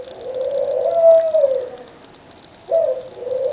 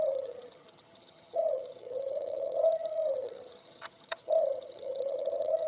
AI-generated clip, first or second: second